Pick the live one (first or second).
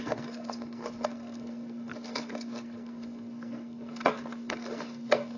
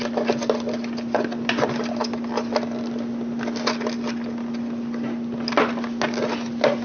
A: second